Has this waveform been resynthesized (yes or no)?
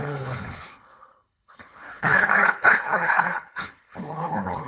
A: yes